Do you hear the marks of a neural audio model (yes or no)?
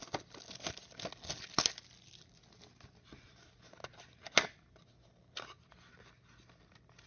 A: no